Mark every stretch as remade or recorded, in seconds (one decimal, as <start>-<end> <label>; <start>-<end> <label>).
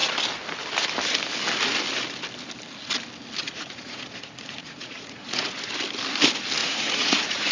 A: 0.0-3.4 recorded; 3.4-5.7 remade; 5.7-6.6 recorded; 6.6-7.5 remade